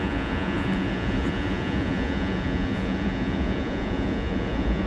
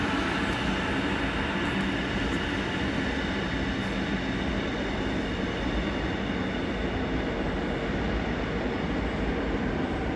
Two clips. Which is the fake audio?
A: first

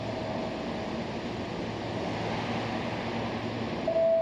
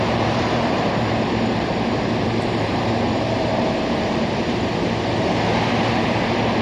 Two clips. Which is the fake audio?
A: second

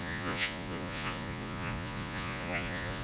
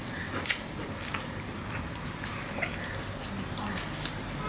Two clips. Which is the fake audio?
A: first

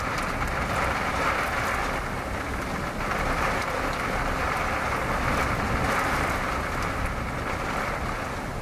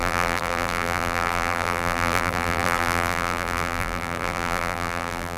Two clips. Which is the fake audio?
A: second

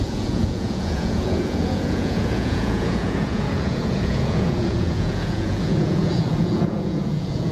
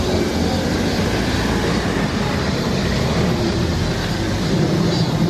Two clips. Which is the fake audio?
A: first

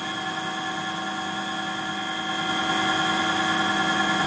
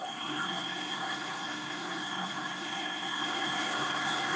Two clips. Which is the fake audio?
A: second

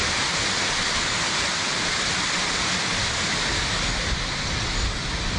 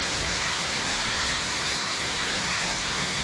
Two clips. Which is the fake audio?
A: second